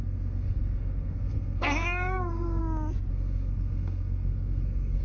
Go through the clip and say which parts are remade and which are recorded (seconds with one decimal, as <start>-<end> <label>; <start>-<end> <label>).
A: 0.0-2.6 remade; 2.6-3.1 recorded; 3.1-5.0 remade